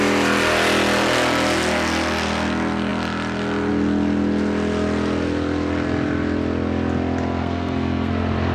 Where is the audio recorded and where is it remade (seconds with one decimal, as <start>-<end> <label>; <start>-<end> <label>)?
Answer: 0.0-7.4 recorded; 7.4-8.1 remade; 8.1-8.5 recorded